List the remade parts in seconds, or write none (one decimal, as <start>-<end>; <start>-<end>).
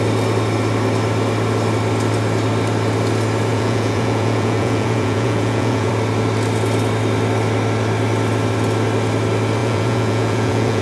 3.5-5.9; 9.6-10.8